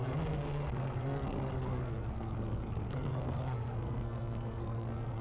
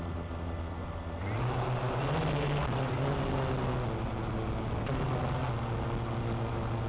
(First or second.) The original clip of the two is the second